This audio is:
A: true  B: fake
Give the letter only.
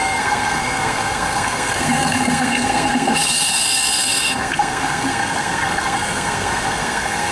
B